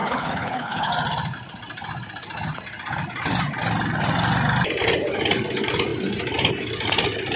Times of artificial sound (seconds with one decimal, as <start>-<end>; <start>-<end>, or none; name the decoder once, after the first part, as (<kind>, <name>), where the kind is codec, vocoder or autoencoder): 0.0-0.9 (codec, HILCodec)